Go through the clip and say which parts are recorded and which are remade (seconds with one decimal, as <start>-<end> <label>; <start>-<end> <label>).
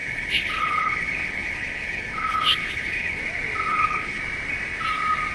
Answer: 0.0-3.2 remade; 3.2-3.7 recorded; 3.7-4.2 remade; 4.2-5.3 recorded